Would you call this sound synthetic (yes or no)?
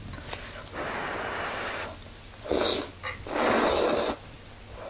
no